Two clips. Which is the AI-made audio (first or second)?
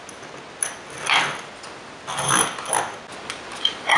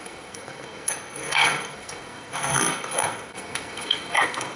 second